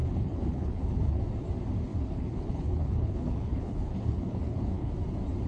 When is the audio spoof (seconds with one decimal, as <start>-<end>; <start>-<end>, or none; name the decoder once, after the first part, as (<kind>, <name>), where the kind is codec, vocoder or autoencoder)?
0.0-1.2 (codec, HILCodec); 1.9-4.9